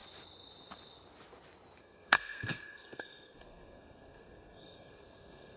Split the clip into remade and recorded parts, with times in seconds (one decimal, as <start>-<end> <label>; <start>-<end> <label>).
0.0-1.8 recorded; 1.8-5.6 remade